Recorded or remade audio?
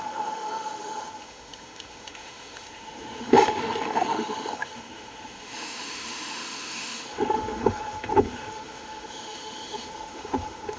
remade